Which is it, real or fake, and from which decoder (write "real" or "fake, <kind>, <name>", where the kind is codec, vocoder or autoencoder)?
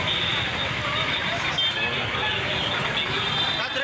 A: real